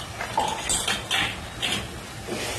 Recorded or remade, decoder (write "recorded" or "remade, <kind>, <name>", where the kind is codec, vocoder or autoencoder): recorded